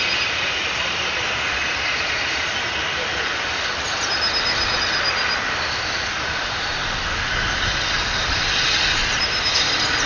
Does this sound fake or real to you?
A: real